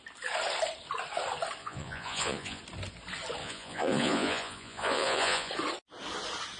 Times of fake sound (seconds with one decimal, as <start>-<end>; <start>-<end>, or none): 1.6-2.6; 3.4-5.5